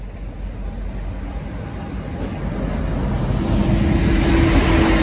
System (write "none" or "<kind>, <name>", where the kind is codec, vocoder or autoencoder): none